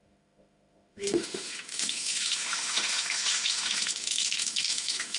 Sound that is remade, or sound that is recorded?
remade